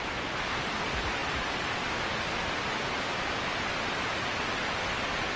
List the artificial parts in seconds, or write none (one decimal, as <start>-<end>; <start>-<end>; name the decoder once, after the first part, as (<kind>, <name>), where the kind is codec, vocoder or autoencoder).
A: none